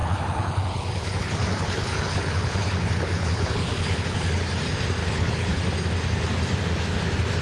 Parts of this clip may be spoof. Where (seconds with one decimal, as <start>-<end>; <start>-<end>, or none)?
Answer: 0.0-4.4; 5.0-5.6